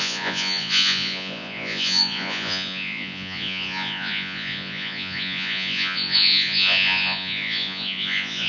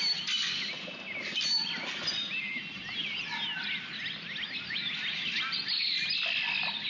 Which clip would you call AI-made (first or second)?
first